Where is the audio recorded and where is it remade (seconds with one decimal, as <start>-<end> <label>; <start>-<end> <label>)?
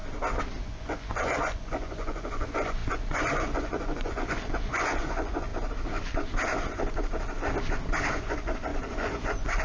0.0-0.6 recorded; 0.6-5.5 remade; 5.5-8.1 recorded; 8.1-9.6 remade